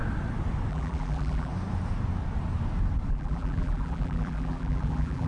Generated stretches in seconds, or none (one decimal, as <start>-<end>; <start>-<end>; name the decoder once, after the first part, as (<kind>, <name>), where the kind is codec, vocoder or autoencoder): 0.7-1.5 (vocoder, BigVGAN v2); 3.1-5.3